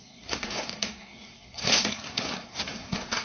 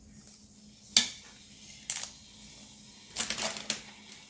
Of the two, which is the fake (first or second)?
first